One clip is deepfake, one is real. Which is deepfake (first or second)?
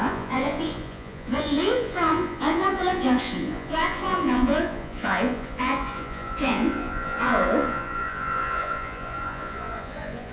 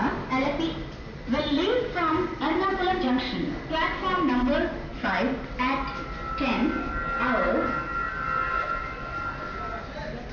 first